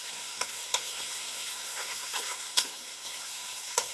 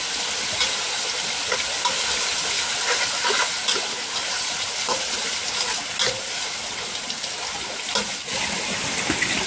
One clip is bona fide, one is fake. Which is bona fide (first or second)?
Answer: second